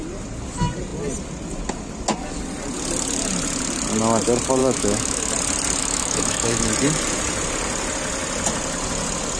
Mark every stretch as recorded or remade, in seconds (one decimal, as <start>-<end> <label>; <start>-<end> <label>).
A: 0.0-4.6 recorded; 4.6-5.3 remade; 5.3-5.8 recorded; 5.8-6.7 remade; 6.7-9.4 recorded